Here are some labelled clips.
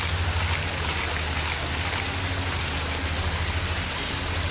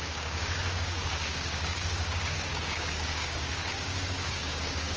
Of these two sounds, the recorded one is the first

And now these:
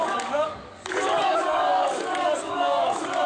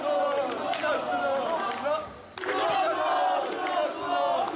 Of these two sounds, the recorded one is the second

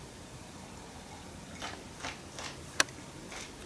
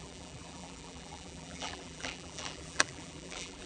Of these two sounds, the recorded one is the first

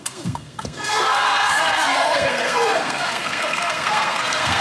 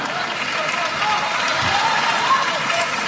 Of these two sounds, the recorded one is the second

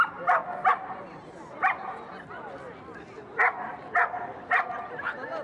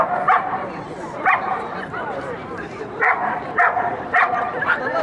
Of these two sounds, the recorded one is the first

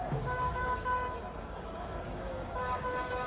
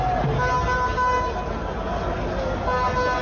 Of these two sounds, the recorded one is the second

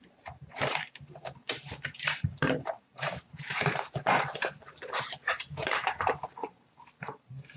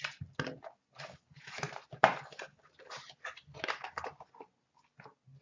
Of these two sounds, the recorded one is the second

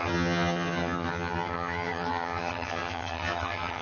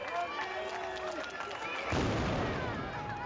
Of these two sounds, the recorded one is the second